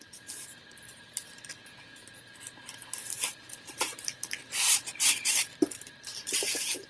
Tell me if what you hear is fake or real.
fake